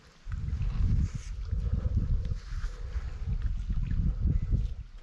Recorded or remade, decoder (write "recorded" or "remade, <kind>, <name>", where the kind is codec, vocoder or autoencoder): recorded